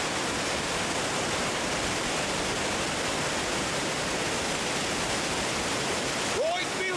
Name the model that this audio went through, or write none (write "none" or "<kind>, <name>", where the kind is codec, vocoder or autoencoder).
none